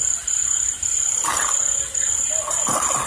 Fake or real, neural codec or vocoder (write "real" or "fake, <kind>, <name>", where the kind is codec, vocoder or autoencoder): real